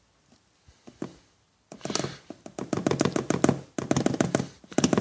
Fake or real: real